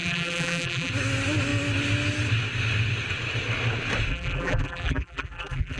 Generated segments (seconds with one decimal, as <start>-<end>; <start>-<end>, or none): 0.0-0.9; 4.1-5.8